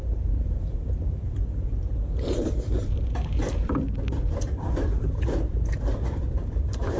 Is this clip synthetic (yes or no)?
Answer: yes